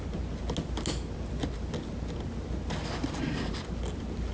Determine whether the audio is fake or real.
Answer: real